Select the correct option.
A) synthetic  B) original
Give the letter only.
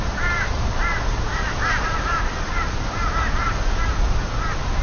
A